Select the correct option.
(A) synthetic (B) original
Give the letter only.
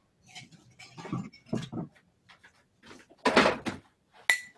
B